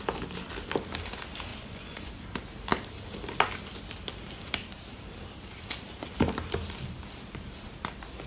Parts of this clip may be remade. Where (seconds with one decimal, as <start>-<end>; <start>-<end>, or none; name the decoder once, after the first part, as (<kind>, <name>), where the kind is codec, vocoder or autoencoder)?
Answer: 1.5-2.1 (vocoder, Vocos)